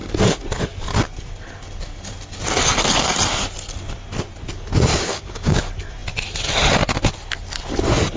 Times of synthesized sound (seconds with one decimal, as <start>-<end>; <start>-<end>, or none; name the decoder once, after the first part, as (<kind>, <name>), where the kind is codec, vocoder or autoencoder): 4.9-5.6 (codec, DAC)